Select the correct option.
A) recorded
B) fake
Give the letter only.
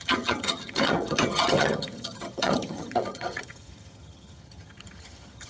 B